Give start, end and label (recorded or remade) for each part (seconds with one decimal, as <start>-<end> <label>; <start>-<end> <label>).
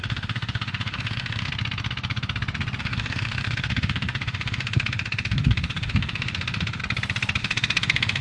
0.0-1.5 remade; 1.5-2.8 recorded; 2.8-6.8 remade; 6.8-7.4 recorded; 7.4-8.2 remade